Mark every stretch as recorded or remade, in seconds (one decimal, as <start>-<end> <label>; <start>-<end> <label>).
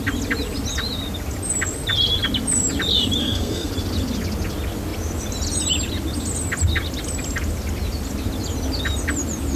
0.0-3.2 recorded; 3.2-3.7 remade; 3.7-9.6 recorded